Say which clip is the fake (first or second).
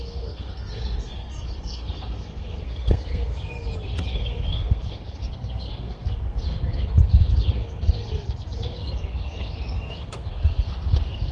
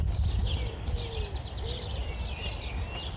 first